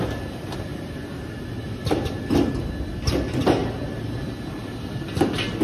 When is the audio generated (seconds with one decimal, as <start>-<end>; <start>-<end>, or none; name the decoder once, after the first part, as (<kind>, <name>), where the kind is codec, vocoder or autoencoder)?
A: 0.7-1.2 (vocoder, BigVGAN v2); 3.6-4.2